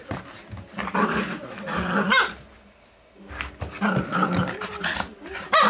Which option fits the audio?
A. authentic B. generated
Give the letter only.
A